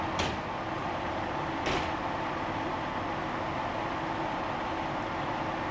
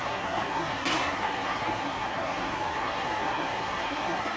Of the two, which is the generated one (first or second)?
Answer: second